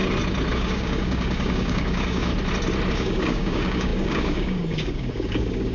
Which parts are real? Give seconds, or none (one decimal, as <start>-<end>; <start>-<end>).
0.0-0.5; 2.3-2.9